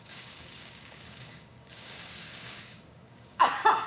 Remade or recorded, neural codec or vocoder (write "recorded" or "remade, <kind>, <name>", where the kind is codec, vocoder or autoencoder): remade, codec, DAC